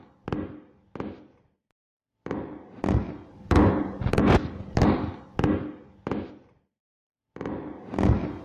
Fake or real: real